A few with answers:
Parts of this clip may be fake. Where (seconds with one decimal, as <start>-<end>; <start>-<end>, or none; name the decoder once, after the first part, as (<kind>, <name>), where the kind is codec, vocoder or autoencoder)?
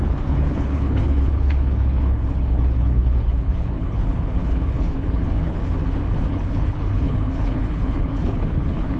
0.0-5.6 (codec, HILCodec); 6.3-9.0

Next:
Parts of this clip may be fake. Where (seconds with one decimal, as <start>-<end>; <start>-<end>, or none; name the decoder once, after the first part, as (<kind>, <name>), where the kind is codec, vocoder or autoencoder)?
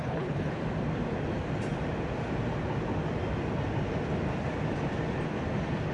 0.0-0.6 (codec, HILCodec)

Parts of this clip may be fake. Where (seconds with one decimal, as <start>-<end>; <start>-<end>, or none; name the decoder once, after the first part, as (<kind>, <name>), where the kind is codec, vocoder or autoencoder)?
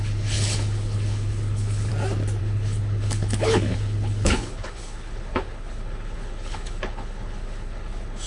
0.0-1.9 (codec, HILCodec); 2.4-8.3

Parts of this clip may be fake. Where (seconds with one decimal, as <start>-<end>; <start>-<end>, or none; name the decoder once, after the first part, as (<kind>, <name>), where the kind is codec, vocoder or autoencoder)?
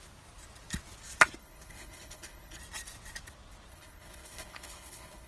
1.4-2.6 (codec, HILCodec); 3.7-5.3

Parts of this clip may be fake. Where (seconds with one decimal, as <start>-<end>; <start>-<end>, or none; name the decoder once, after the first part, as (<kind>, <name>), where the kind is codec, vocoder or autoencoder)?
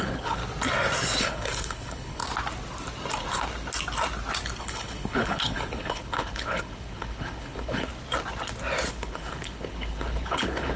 0.0-0.4 (codec, HILCodec); 1.2-2.2; 4.6-7.9; 8.9-10.8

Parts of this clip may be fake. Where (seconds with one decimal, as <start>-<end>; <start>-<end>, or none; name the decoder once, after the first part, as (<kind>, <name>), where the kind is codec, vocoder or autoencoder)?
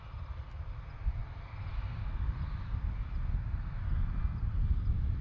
none